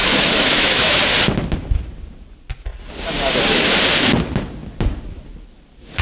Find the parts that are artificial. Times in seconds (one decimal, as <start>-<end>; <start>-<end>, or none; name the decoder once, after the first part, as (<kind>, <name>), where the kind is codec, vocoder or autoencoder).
0.0-1.0 (autoencoder, DAC-VAE)

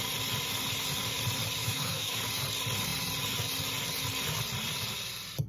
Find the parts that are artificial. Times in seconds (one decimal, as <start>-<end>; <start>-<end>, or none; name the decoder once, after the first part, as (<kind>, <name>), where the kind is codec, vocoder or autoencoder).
1.6-2.2 (autoencoder, DAC-VAE)

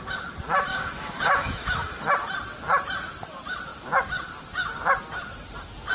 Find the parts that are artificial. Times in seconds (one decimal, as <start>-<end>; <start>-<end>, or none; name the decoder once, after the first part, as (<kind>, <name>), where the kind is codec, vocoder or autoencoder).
0.7-2.1 (autoencoder, DAC-VAE)

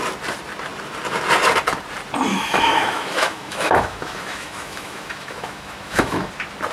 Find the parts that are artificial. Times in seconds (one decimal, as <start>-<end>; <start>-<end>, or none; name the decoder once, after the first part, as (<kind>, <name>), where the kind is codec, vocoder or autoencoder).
2.3-6.3 (autoencoder, DAC-VAE)

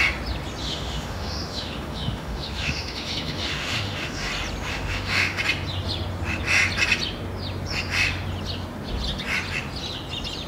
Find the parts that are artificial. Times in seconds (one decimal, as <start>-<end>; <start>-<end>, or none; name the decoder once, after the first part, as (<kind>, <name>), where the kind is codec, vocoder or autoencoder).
0.6-4.3 (autoencoder, DAC-VAE); 4.7-5.4

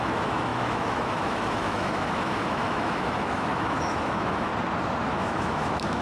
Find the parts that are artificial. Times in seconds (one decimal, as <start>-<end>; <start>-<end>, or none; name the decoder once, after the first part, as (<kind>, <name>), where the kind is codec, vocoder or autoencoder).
0.0-4.5 (autoencoder, DAC-VAE); 5.1-6.0

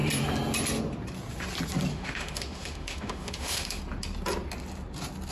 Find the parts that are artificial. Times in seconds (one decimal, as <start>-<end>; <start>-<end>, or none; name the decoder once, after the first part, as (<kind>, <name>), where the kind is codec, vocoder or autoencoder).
1.9-3.8 (autoencoder, DAC-VAE)

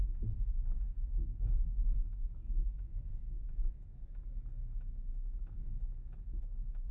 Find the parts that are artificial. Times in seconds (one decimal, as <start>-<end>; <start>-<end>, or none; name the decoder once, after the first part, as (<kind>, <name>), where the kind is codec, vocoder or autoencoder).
0.0-6.9 (autoencoder, DAC-VAE)